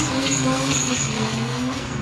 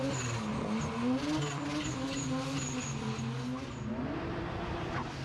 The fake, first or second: first